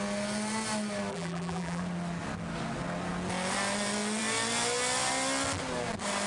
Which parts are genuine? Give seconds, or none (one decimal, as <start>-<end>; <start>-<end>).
0.0-1.1; 1.8-6.3